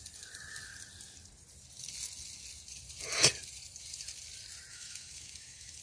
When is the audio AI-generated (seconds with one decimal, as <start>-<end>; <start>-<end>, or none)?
4.7-5.8